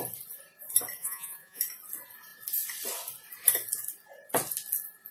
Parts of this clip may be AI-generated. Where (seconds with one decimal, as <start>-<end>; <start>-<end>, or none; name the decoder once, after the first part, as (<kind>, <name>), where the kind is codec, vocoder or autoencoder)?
1.0-1.6 (vocoder, Vocos)